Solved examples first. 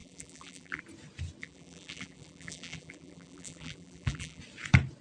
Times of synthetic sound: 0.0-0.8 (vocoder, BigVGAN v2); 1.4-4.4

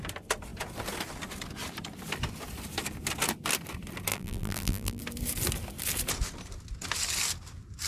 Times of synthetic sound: 4.1-5.0 (vocoder, BigVGAN v2)

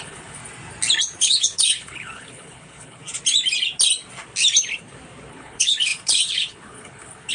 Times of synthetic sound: 0.0-0.4 (codec, HILCodec); 1.2-3.0; 5.3-7.3

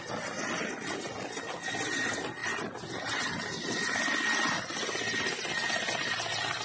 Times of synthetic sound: none

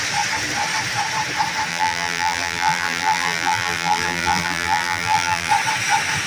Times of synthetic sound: 1.7-5.5 (vocoder, BigVGAN v2)

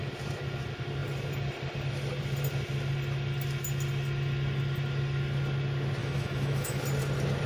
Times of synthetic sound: 6.0-6.8 (autoencoder, DAC-VAE)

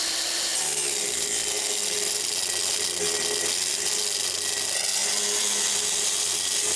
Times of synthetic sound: none